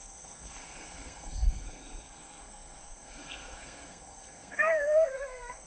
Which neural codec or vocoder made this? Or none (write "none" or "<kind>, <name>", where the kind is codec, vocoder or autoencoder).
codec, SNAC